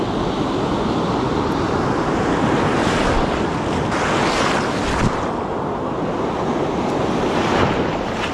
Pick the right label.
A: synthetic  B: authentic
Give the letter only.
B